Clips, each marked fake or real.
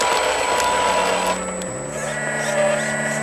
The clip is real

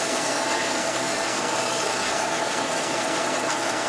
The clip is fake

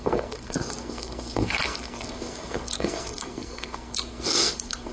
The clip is fake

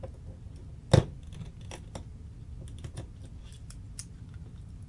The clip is real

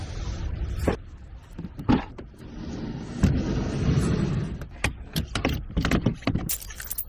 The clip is real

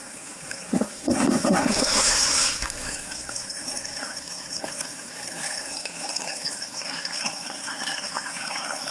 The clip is fake